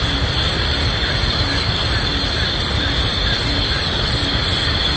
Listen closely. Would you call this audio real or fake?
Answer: real